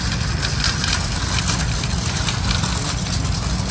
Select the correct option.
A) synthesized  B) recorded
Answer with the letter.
B